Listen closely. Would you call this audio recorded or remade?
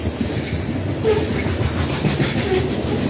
recorded